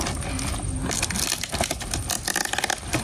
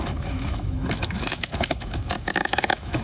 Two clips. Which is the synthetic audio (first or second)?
second